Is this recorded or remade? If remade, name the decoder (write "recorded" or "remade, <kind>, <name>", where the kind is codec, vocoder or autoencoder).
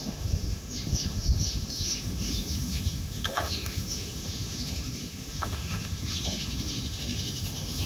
remade, autoencoder, DAC-VAE